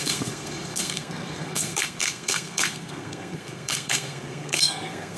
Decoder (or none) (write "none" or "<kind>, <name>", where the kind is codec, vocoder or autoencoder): codec, SNAC